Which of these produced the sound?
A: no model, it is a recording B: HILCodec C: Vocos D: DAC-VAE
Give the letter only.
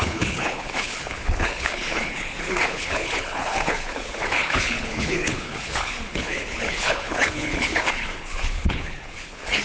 B